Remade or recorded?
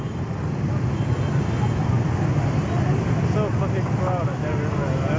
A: recorded